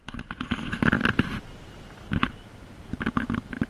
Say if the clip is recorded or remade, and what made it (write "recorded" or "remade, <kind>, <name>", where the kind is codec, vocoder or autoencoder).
recorded